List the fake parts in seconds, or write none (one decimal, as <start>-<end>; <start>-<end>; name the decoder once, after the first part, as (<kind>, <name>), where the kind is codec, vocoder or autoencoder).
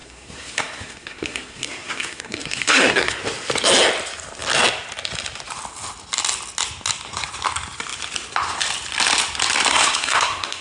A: 0.0-3.2 (codec, SNAC); 9.7-10.6